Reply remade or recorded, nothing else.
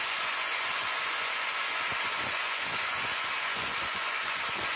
remade